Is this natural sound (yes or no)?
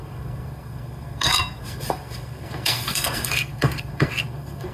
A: no